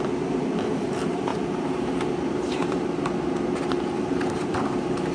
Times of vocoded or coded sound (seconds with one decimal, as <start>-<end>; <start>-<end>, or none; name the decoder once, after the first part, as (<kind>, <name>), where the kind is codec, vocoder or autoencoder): 0.0-5.1 (vocoder, BigVGAN v2)